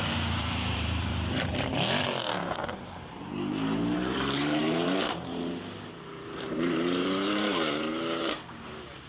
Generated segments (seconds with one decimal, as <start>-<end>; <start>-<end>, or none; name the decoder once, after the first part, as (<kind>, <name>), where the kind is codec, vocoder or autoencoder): 0.0-1.5 (vocoder, BigVGAN v2); 2.2-9.1